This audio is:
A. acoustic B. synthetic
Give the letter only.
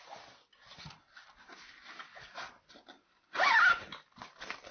A